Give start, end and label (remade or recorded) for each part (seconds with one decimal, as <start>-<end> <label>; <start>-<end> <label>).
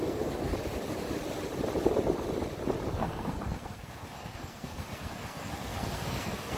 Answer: 0.0-0.5 remade; 0.5-2.9 recorded; 2.9-6.6 remade